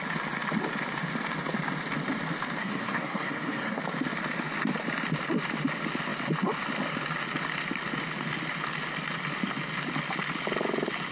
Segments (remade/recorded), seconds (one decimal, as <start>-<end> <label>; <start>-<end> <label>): 0.0-2.6 recorded; 2.6-3.8 remade; 3.8-11.1 recorded